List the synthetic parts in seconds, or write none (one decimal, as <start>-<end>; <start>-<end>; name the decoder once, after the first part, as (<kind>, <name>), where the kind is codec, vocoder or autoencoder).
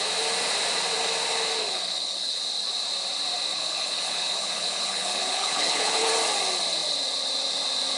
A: 1.6-2.4 (codec, HILCodec); 3.5-6.1